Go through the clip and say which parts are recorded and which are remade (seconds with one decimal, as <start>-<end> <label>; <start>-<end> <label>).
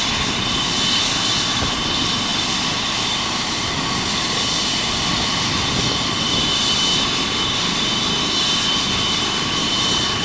0.0-10.2 recorded